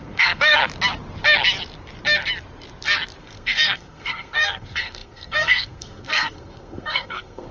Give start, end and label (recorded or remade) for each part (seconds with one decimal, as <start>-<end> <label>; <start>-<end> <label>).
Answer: 0.0-0.6 remade; 0.6-3.2 recorded; 3.2-7.5 remade